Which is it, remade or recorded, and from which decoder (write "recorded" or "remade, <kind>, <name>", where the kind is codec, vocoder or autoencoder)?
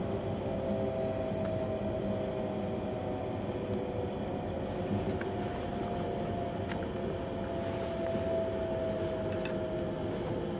recorded